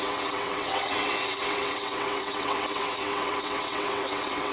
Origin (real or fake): fake